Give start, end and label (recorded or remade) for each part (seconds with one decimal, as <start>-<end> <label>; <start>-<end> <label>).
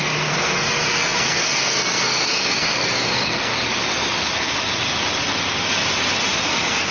0.0-3.5 remade; 3.5-6.5 recorded; 6.5-6.9 remade